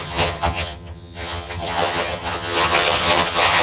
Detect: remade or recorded remade